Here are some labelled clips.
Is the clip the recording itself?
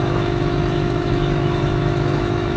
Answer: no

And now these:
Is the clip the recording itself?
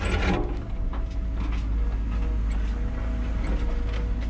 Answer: yes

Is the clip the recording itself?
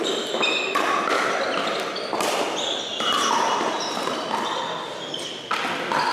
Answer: yes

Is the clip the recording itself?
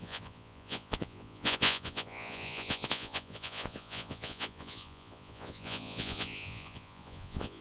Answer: no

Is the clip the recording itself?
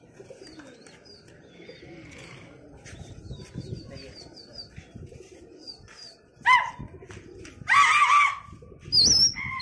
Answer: yes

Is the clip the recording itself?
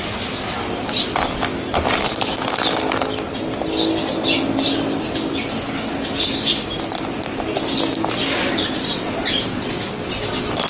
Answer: yes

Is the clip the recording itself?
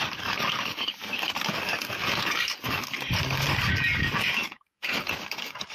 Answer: no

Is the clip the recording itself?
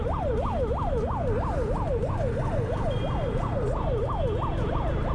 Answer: yes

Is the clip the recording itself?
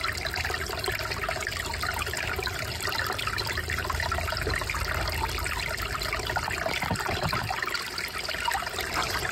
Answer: yes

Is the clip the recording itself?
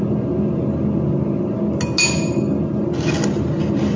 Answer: yes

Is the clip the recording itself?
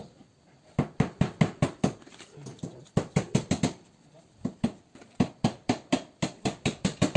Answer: yes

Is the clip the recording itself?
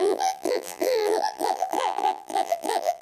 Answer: no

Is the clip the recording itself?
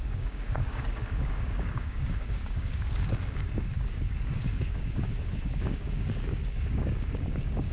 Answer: no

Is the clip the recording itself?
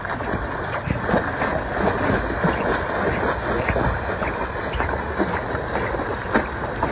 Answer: yes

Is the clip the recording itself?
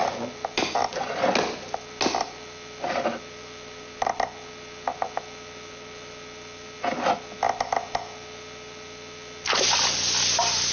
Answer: yes